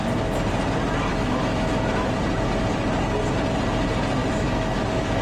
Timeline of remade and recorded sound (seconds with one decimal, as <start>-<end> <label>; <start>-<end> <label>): 0.0-1.1 recorded; 1.1-2.2 remade; 2.2-4.2 recorded; 4.2-5.2 remade